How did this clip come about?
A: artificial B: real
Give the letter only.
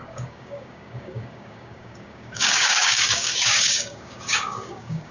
A